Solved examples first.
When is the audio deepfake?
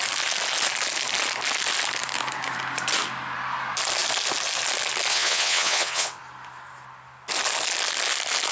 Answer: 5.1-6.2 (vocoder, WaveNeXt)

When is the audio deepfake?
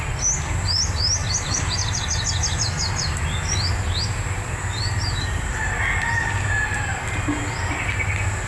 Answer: none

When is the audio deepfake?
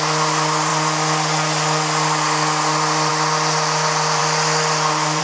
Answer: none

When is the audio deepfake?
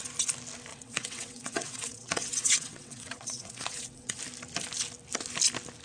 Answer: 0.7-4.2 (vocoder, WaveNeXt)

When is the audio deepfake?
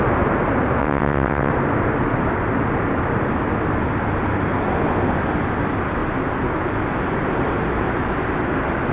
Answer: 0.8-1.5 (vocoder, WaveNeXt)